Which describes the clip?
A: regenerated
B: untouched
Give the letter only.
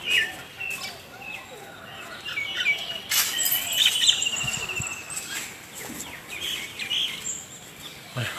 B